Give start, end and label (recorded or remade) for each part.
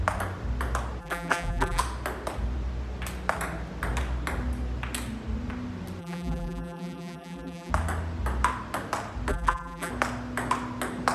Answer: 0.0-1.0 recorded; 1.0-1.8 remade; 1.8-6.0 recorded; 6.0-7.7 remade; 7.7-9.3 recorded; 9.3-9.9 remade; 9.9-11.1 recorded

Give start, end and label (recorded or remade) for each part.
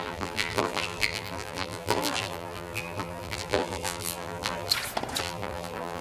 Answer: 0.0-4.7 remade; 4.7-5.2 recorded; 5.2-6.0 remade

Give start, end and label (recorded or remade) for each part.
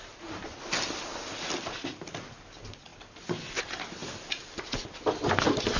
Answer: 0.0-1.1 recorded; 1.1-1.6 remade; 1.6-2.9 recorded; 2.9-3.5 remade; 3.5-5.8 recorded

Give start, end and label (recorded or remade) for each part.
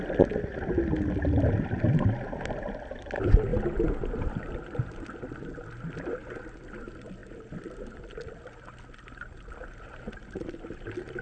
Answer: 0.0-11.2 recorded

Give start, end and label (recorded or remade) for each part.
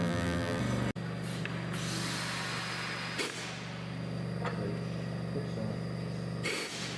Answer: 0.0-0.6 remade; 0.6-7.0 recorded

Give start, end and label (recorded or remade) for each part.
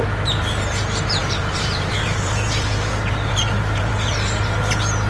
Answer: 0.0-1.2 recorded; 1.2-3.9 remade; 3.9-5.1 recorded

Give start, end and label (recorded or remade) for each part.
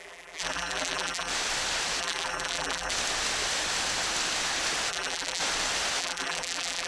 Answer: 0.0-1.3 remade; 1.3-2.0 recorded; 2.0-2.9 remade; 2.9-4.9 recorded; 4.9-5.4 remade; 5.4-6.0 recorded; 6.0-6.9 remade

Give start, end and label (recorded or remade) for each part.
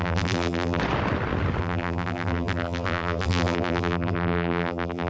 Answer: 0.0-0.8 remade; 0.8-1.6 recorded; 1.6-5.1 remade